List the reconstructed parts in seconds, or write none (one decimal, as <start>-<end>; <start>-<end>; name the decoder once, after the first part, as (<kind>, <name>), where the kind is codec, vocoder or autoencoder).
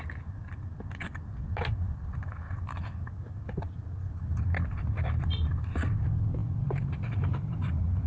none